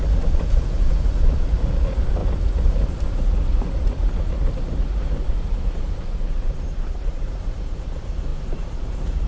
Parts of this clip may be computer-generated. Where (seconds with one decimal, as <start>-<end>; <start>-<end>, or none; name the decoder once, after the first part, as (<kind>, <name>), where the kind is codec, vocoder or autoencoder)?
0.0-9.3 (vocoder, Vocos)